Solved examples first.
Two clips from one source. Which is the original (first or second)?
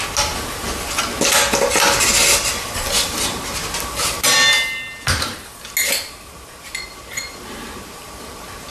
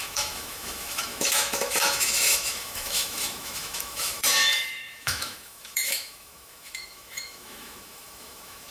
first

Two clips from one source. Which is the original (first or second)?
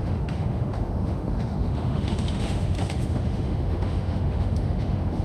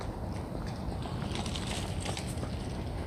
second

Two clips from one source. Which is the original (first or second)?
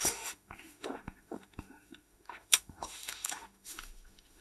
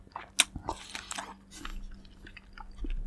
second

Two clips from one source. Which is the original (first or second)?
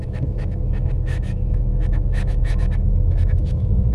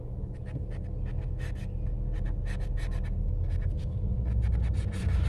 second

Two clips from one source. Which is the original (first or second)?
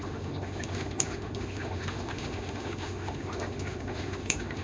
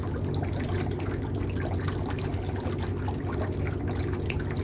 second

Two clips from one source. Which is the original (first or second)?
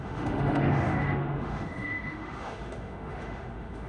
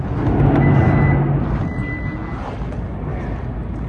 second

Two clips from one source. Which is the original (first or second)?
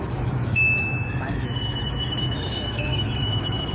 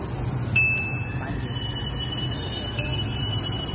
second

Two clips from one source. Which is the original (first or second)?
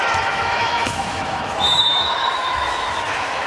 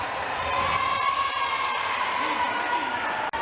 second